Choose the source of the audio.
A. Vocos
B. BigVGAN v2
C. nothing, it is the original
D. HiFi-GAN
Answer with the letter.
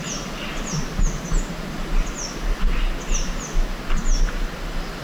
C